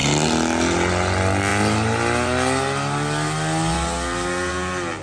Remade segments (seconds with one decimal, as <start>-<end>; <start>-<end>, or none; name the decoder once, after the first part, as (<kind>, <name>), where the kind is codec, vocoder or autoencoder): none